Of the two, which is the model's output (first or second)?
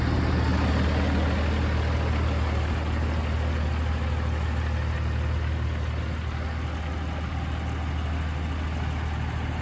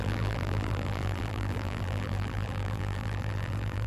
second